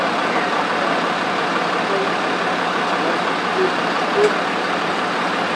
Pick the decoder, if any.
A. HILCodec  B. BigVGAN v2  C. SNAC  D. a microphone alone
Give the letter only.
D